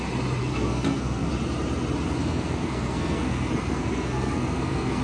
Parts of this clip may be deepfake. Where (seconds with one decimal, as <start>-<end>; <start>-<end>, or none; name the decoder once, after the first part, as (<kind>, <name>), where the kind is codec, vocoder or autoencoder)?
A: 0.4-1.3 (codec, SNAC); 2.2-5.0